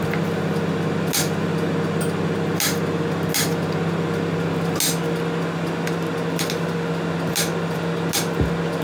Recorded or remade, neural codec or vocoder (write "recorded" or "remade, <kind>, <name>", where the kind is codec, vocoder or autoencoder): recorded